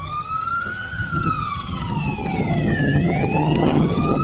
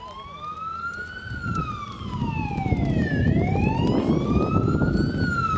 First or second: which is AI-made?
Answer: first